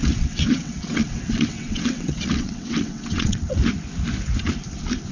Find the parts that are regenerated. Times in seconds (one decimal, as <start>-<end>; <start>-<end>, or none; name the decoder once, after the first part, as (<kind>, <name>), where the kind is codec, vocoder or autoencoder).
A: 0.0-3.6 (vocoder, WaveNeXt)